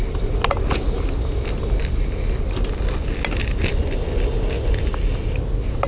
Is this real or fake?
real